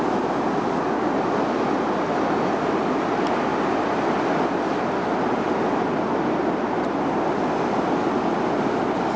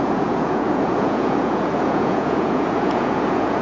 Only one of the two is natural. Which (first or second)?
first